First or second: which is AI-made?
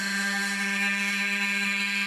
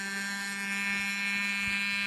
first